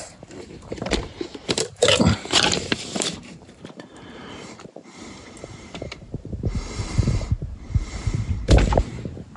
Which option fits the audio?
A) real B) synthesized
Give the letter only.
B